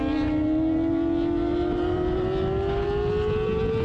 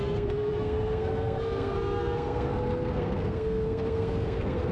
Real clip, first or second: first